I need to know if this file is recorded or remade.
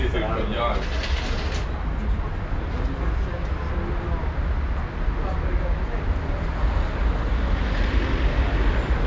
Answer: recorded